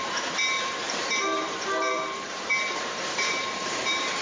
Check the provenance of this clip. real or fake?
fake